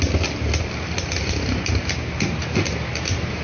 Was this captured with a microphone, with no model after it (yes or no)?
yes